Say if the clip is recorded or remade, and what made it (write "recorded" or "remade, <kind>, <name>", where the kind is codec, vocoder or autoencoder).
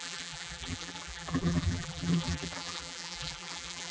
remade, vocoder, BigVGAN v2